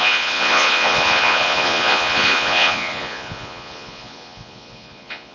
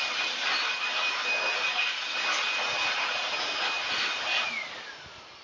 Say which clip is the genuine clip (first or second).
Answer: second